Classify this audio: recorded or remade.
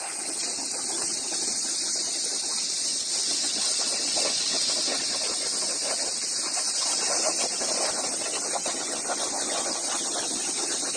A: recorded